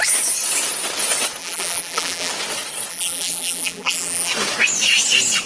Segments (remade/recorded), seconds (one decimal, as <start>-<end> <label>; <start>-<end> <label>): 0.0-1.4 recorded; 1.4-2.3 remade; 2.3-2.9 recorded; 2.9-4.3 remade; 4.3-5.5 recorded